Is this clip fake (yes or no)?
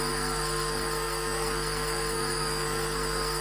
yes